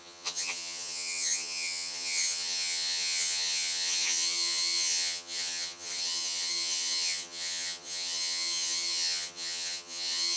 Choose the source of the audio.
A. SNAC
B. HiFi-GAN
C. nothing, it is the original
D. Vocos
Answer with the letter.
B